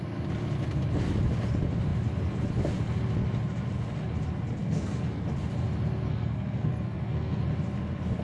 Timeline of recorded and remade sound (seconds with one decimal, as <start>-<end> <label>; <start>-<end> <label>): 0.0-4.6 recorded; 4.6-5.2 remade; 5.2-6.1 recorded; 6.1-7.4 remade; 7.4-8.2 recorded